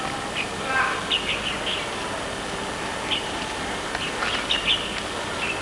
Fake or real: real